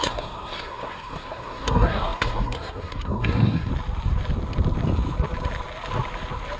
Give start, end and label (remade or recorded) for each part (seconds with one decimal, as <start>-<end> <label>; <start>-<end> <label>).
0.0-3.7 remade; 3.7-6.6 recorded

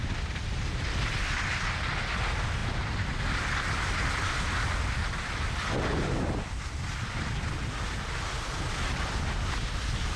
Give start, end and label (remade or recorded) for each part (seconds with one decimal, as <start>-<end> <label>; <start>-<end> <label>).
0.0-10.2 recorded

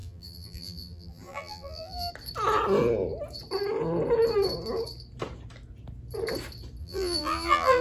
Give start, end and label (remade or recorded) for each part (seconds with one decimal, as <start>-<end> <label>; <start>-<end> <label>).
0.0-2.1 remade; 2.1-6.8 recorded; 6.8-7.8 remade

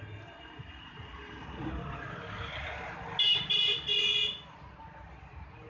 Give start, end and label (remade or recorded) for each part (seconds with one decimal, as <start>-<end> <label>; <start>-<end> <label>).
0.0-5.7 recorded

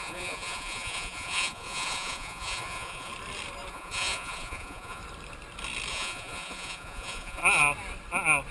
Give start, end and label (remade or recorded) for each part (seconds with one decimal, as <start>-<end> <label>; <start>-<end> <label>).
0.0-3.1 remade; 3.1-3.7 recorded; 3.7-5.0 remade; 5.0-5.9 recorded; 5.9-7.4 remade; 7.4-8.5 recorded

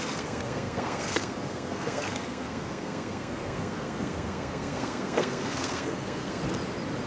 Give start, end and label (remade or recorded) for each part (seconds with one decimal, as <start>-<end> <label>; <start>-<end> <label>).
0.0-6.4 remade; 6.4-7.1 recorded

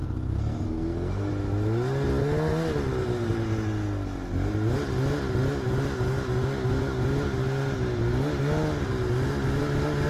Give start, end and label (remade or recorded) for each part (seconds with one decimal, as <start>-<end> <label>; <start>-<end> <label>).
0.0-1.3 remade; 1.3-10.1 recorded